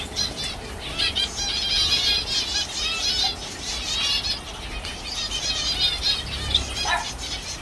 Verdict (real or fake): real